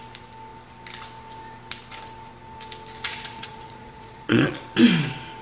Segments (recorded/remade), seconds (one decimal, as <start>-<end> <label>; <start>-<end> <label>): 0.0-3.1 recorded; 3.1-4.6 remade; 4.6-5.4 recorded